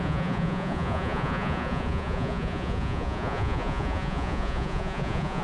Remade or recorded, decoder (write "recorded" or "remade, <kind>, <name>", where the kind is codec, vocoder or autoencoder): remade, vocoder, Vocos